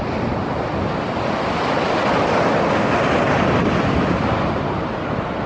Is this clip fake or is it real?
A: real